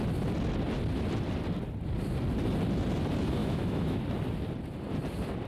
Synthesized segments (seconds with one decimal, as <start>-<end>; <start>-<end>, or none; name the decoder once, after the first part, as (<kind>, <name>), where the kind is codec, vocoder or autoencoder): 3.4-4.0 (autoencoder, DAC-VAE)